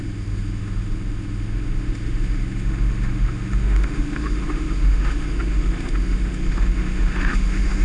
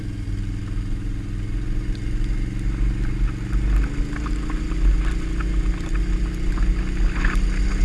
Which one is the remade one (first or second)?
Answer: first